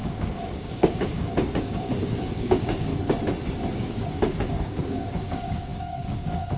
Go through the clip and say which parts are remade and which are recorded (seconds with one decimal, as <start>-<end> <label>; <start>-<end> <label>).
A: 0.0-2.9 remade; 2.9-3.7 recorded; 3.7-6.6 remade